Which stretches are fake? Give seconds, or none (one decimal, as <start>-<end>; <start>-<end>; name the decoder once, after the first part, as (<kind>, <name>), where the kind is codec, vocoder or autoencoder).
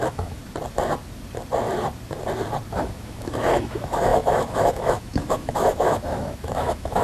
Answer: 0.0-0.4 (autoencoder, DAC-VAE); 2.8-7.0